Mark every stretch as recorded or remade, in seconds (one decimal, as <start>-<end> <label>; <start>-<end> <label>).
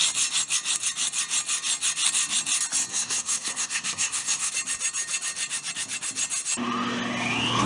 0.0-2.9 recorded; 2.9-4.5 remade; 4.5-7.7 recorded